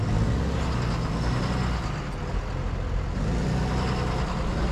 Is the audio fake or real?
real